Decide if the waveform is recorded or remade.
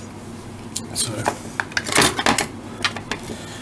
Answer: recorded